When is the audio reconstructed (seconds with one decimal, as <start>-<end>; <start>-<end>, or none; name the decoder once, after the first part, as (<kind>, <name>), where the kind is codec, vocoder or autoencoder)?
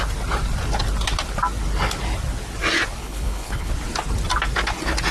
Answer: 3.0-3.7 (codec, HILCodec)